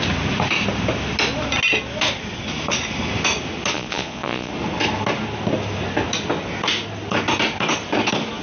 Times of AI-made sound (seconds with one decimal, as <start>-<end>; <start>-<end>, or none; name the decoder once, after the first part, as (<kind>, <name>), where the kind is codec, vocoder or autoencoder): 3.7-4.5 (vocoder, Vocos)